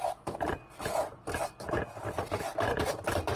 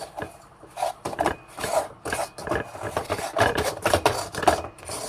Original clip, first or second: first